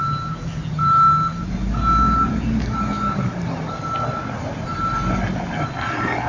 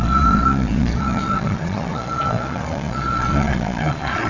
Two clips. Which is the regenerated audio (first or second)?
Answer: second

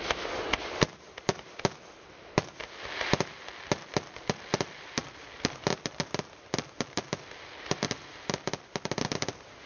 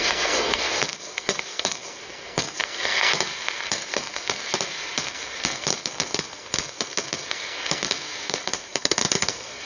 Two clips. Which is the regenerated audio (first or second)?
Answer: second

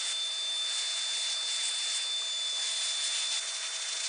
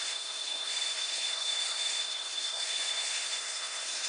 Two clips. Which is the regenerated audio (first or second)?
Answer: second